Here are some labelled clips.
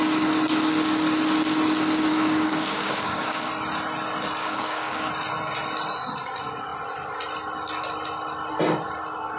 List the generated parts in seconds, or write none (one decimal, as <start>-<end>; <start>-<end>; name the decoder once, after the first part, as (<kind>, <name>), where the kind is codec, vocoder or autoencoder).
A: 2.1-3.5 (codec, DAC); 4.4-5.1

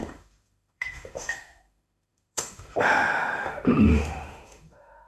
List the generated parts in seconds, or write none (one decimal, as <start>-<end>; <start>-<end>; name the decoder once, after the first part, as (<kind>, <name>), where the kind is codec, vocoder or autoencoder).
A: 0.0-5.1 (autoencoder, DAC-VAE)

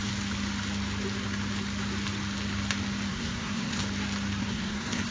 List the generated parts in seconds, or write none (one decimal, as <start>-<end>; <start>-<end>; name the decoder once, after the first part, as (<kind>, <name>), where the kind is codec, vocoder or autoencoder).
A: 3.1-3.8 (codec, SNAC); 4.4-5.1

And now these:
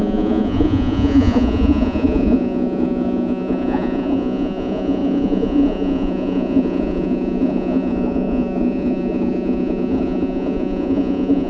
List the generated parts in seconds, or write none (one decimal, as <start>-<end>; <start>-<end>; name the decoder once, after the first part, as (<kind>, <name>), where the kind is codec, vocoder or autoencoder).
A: 0.0-11.5 (vocoder, Vocos)

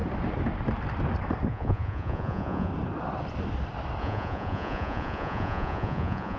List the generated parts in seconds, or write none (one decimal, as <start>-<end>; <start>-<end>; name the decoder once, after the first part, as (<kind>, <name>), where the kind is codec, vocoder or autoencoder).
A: 1.5-2.7 (vocoder, Vocos); 4.0-6.4

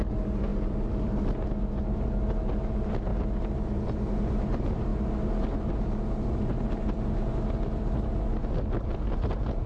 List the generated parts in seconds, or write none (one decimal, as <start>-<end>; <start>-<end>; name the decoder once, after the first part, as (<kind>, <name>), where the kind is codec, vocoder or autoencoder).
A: 0.5-1.3 (vocoder, BigVGAN v2)